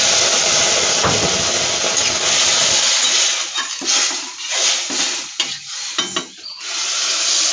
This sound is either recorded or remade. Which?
recorded